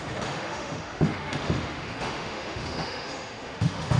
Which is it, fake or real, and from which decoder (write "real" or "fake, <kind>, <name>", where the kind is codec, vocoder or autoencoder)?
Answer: fake, autoencoder, DAC-VAE